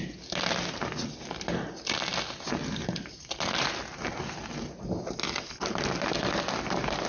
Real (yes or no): yes